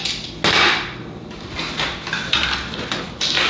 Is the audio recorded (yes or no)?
yes